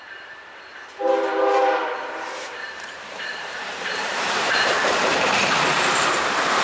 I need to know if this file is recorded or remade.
remade